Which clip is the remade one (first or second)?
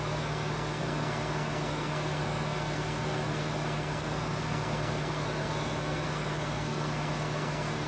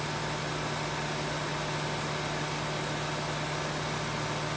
first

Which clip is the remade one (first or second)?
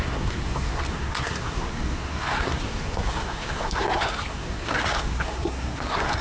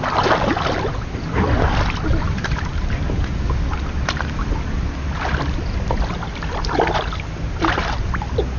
first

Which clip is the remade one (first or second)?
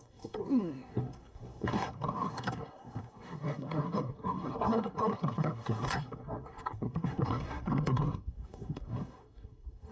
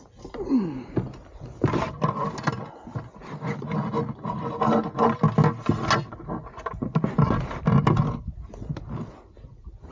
first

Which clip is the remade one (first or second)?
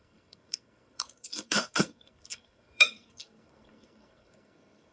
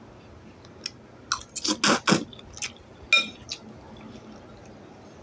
first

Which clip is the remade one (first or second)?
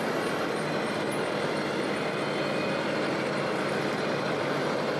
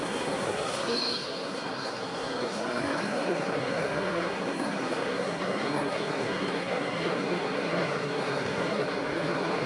second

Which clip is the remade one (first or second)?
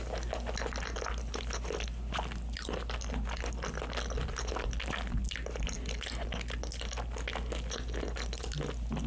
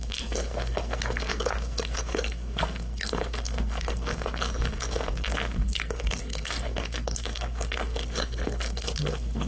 second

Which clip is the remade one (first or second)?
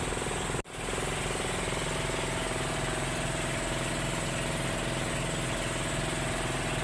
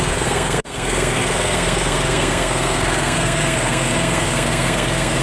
second